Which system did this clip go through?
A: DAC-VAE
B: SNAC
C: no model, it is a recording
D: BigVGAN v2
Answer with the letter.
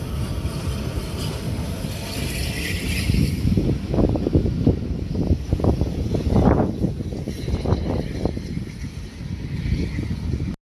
C